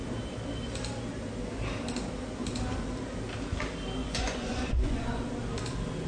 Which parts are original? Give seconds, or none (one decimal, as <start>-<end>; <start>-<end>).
0.0-4.0; 5.2-6.1